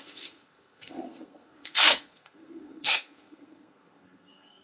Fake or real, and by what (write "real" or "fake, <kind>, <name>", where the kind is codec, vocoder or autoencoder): fake, codec, SNAC